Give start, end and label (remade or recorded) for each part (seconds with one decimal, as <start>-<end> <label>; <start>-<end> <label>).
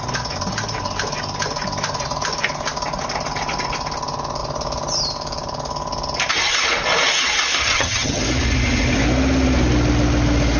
0.0-7.6 recorded; 7.6-8.2 remade; 8.2-10.6 recorded